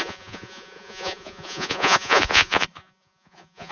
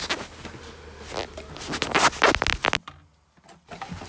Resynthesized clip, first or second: first